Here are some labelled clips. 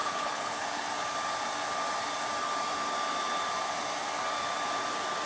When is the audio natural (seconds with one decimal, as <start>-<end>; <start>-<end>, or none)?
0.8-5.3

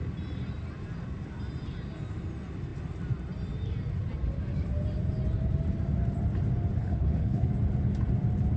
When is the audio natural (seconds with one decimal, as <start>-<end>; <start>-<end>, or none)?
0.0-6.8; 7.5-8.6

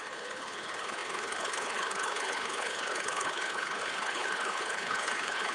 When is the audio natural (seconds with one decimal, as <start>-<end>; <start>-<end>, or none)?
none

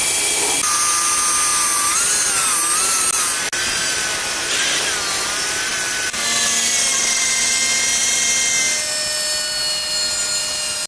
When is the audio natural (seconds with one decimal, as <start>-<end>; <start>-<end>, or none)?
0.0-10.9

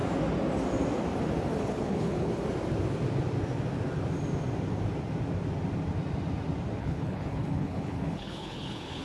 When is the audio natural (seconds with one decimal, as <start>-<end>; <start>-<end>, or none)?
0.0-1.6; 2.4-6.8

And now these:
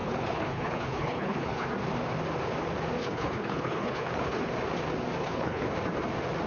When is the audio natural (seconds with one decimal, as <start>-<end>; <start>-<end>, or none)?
1.7-3.0; 4.5-5.2; 5.7-6.5

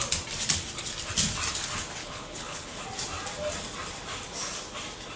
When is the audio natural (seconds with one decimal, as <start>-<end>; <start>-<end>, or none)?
0.0-2.0; 2.8-5.2

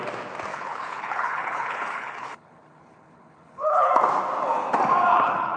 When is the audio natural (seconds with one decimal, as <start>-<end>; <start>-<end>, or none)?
0.0-0.5; 3.9-5.1